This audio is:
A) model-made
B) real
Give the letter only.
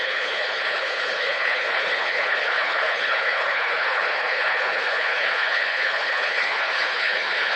A